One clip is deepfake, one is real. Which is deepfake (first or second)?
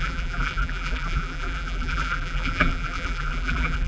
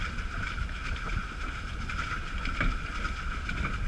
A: first